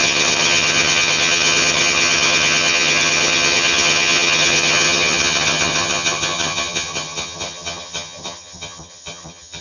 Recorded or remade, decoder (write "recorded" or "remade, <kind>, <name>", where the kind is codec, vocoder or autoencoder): remade, vocoder, HiFi-GAN